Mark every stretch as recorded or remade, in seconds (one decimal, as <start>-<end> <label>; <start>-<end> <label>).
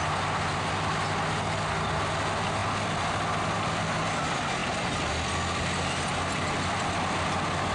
0.0-7.7 recorded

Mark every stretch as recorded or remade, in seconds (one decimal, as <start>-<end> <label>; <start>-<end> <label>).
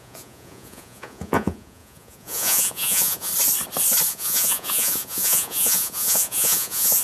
0.0-3.3 remade; 3.3-4.1 recorded; 4.1-7.0 remade